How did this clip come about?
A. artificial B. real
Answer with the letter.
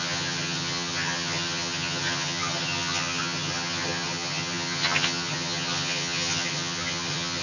A